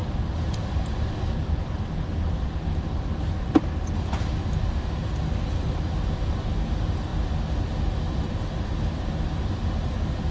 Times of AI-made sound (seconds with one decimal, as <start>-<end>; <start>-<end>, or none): none